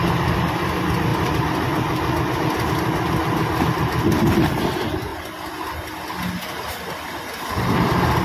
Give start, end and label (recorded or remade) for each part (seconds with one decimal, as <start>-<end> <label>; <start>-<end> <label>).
0.0-8.2 recorded